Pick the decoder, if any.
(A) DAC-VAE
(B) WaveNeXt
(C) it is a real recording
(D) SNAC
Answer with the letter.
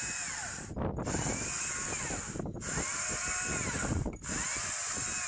C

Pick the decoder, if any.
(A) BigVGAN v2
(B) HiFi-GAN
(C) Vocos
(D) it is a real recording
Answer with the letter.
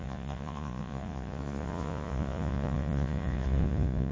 C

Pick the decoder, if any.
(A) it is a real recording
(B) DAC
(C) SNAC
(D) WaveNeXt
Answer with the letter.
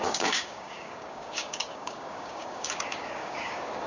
B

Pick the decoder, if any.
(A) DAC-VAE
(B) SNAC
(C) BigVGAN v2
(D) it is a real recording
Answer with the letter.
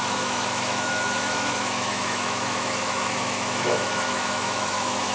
A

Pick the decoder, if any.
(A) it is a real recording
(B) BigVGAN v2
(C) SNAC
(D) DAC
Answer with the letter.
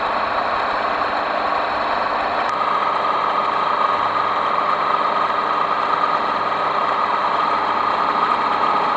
A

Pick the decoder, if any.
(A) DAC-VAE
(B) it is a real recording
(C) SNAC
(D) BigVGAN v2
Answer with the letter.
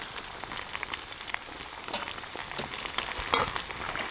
B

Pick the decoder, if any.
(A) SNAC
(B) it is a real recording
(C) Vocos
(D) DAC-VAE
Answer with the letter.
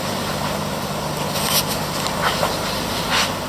B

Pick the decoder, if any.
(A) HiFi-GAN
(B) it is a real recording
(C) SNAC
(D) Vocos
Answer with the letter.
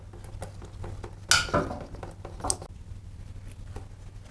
B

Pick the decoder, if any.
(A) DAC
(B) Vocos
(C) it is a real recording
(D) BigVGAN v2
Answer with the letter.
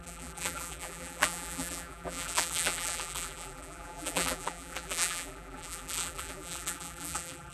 D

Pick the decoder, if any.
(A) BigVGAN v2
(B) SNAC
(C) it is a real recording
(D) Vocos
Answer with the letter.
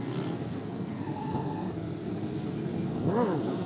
B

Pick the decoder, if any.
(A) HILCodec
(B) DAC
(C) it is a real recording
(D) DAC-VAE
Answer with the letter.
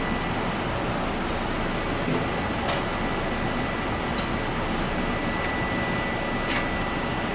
C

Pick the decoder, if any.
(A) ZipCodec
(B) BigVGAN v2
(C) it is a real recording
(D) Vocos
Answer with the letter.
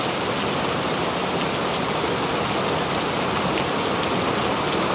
C